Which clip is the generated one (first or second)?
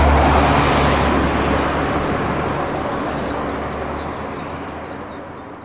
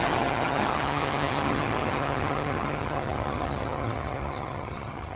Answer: second